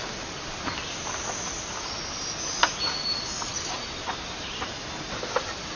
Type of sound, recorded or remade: recorded